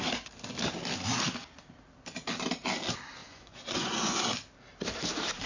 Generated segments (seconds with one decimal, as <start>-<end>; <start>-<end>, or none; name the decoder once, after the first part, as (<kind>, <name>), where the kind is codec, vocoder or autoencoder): 3.2-4.2 (vocoder, Vocos)